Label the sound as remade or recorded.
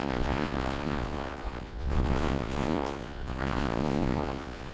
remade